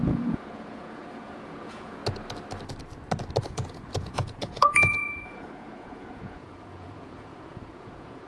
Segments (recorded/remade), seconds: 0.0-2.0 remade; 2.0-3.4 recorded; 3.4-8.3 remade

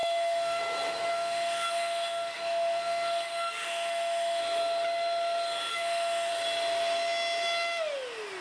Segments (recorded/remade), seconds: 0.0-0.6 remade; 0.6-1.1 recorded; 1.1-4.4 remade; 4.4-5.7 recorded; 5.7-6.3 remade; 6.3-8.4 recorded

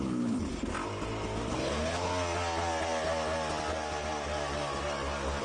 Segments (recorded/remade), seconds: 0.0-0.5 remade; 0.5-1.5 recorded; 1.5-2.1 remade; 2.1-5.4 recorded